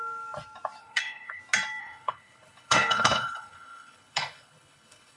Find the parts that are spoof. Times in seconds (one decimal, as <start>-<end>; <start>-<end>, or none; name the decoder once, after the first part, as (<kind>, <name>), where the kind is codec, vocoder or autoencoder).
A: 0.8-1.4 (codec, HILCodec); 1.8-5.2